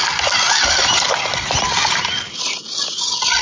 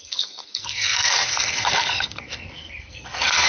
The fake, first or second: second